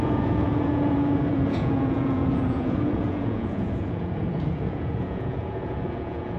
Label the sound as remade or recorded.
remade